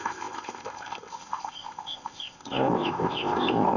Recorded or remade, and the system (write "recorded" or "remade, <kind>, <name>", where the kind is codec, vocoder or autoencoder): remade, codec, ZipCodec